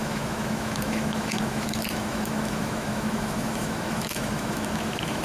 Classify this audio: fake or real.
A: fake